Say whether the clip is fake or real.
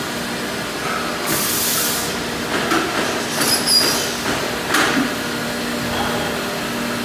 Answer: real